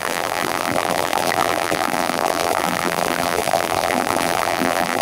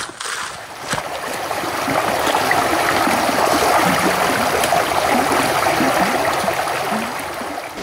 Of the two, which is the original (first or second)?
second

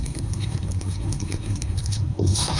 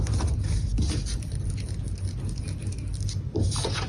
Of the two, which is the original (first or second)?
second